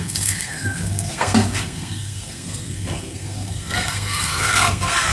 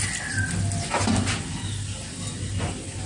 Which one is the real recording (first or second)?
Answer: second